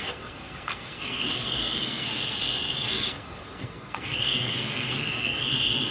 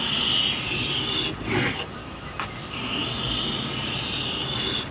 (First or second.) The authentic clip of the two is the second